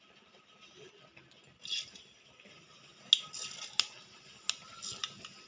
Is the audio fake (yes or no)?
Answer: no